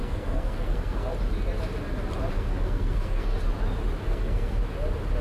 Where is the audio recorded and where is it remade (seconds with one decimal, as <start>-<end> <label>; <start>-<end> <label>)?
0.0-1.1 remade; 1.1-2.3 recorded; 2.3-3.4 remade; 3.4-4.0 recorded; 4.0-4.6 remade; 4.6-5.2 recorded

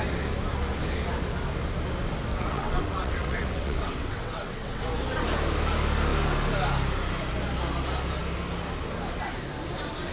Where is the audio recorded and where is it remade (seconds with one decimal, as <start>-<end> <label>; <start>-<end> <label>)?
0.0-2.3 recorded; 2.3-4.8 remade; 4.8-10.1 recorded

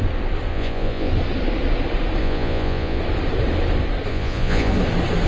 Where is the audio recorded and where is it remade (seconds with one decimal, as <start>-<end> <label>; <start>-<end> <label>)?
0.0-0.5 recorded; 0.5-1.1 remade; 1.1-2.2 recorded; 2.2-3.0 remade; 3.0-4.1 recorded; 4.1-4.7 remade; 4.7-5.3 recorded